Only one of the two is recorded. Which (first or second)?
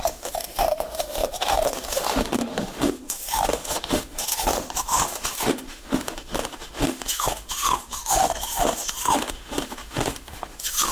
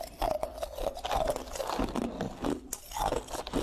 second